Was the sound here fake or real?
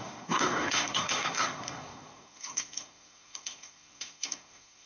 fake